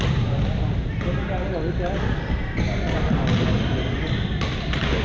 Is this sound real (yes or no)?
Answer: yes